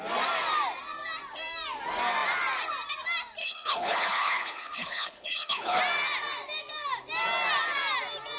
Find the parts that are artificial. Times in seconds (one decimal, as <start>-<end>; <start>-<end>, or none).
3.4-5.8